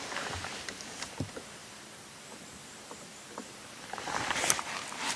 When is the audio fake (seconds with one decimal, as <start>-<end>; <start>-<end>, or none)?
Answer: 1.6-4.7